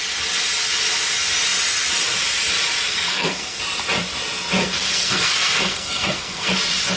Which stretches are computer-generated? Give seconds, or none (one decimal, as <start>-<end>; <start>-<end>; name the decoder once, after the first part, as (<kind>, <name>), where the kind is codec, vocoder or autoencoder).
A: 2.9-3.6 (codec, SNAC); 4.6-6.5